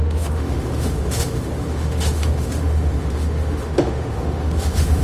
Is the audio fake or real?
fake